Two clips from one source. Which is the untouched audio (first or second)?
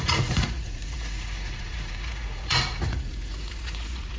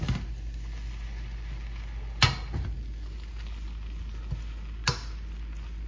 second